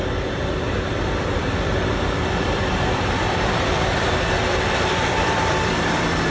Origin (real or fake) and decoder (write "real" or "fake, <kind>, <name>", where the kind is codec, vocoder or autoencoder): fake, vocoder, BigVGAN v2